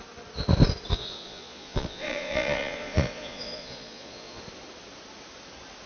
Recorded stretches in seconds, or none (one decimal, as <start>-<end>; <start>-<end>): 0.0-0.9; 4.4-5.9